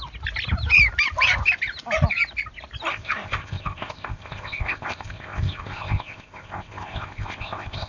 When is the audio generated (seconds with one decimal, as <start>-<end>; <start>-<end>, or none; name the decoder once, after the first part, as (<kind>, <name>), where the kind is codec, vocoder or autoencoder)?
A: 2.9-7.9 (codec, ZipCodec)